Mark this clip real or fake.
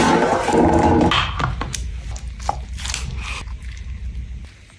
real